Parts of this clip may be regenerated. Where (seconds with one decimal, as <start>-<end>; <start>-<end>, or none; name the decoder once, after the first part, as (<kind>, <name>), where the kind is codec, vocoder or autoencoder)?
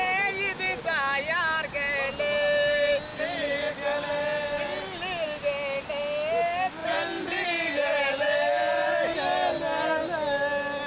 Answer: 3.1-3.7 (vocoder, BigVGAN v2); 6.8-8.1